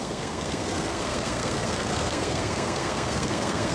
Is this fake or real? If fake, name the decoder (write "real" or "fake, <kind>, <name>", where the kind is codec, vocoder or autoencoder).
fake, codec, SNAC